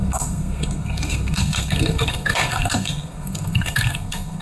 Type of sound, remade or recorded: remade